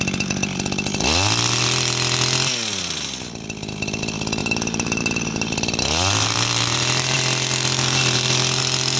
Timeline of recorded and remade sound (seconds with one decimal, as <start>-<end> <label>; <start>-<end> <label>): 0.0-4.4 recorded; 4.4-9.0 remade